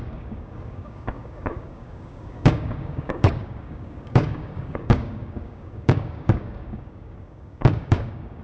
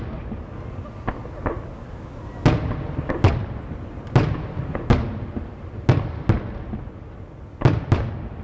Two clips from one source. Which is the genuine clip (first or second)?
second